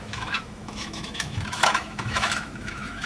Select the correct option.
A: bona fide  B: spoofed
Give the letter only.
B